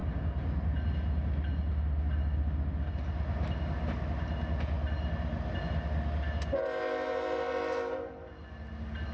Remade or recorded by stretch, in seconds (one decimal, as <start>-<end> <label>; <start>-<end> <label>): 0.0-9.1 recorded